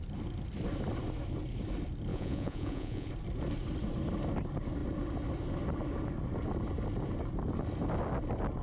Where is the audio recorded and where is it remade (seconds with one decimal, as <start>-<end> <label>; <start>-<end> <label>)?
0.0-2.1 recorded; 2.1-3.1 remade; 3.1-8.6 recorded